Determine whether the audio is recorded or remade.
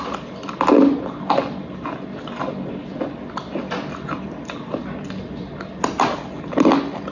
recorded